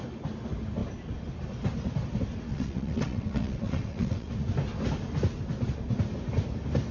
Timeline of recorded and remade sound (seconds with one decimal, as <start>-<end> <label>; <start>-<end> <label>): 0.0-2.5 recorded; 2.5-4.3 remade; 4.3-6.9 recorded